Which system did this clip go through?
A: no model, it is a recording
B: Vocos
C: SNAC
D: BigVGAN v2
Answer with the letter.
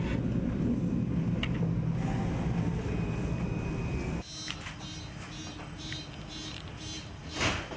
A